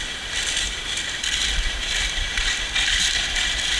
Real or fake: fake